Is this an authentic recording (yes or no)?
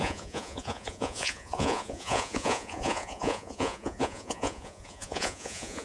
no